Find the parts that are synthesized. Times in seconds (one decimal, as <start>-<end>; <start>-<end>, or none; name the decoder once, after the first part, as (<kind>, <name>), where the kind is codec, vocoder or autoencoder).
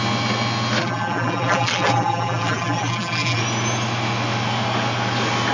0.8-3.4 (vocoder, BigVGAN v2)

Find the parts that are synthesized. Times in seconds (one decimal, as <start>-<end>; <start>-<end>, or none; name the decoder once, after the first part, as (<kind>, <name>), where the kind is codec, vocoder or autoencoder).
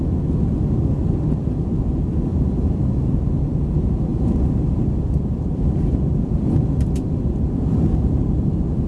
2.3-3.5 (vocoder, BigVGAN v2)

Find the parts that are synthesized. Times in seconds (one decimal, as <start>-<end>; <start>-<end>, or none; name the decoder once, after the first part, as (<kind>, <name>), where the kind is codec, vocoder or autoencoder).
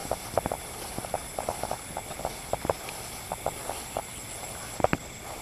none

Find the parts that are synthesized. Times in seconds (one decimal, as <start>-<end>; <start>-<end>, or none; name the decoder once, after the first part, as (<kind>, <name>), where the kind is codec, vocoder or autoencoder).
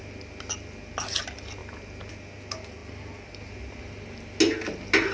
none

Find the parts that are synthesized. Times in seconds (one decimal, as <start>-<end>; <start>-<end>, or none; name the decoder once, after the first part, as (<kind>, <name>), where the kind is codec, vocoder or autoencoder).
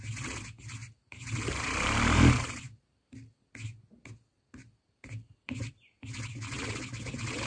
0.8-3.5 (vocoder, BigVGAN v2); 4.3-5.7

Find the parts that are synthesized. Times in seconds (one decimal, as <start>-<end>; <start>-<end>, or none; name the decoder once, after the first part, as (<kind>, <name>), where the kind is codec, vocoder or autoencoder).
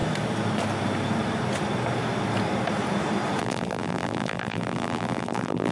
3.4-5.7 (vocoder, BigVGAN v2)